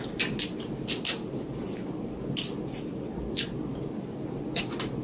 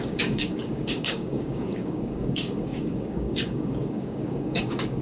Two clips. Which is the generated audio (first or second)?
second